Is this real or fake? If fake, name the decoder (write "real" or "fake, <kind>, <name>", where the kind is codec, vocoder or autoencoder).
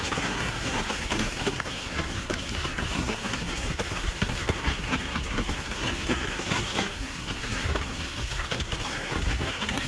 fake, codec, SNAC